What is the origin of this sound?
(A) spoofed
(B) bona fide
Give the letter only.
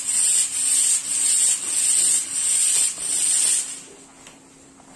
B